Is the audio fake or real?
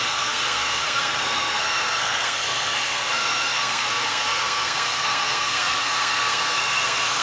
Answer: fake